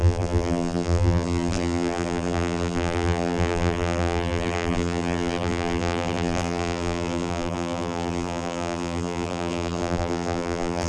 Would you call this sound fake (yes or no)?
yes